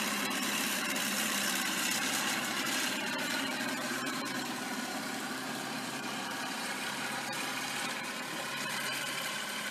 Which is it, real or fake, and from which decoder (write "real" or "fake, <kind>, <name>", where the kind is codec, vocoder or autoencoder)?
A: fake, vocoder, BigVGAN v2